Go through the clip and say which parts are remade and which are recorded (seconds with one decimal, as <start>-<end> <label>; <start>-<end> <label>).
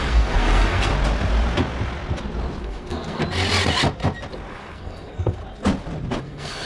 0.0-0.9 remade; 0.9-2.6 recorded; 2.6-3.2 remade; 3.2-4.5 recorded; 4.5-5.4 remade; 5.4-6.2 recorded; 6.2-6.7 remade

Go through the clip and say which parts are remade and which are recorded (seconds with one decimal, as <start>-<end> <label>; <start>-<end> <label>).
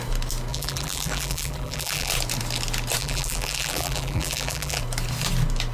0.0-0.5 recorded; 0.5-2.1 remade; 2.1-3.0 recorded; 3.0-4.8 remade; 4.8-5.7 recorded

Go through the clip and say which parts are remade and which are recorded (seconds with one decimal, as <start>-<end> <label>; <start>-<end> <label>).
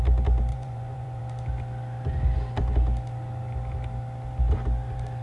0.0-0.5 recorded; 0.5-1.2 remade; 1.2-5.2 recorded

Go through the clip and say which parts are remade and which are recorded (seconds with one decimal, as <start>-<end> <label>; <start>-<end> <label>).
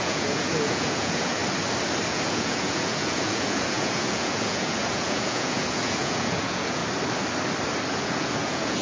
0.0-1.4 remade; 1.4-2.1 recorded; 2.1-6.8 remade; 6.8-7.9 recorded; 7.9-8.8 remade